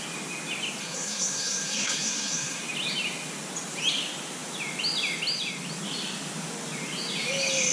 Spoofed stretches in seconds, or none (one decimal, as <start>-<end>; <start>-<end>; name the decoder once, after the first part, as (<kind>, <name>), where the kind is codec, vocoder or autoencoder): 0.8-2.6 (codec, SNAC)